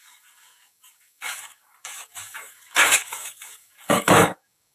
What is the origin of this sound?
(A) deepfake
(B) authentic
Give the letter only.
A